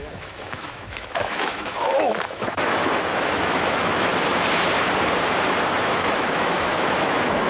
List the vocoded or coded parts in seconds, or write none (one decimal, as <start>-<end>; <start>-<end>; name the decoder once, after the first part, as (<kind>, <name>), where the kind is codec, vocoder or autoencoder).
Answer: 0.0-4.1 (autoencoder, DAC-VAE); 5.9-7.5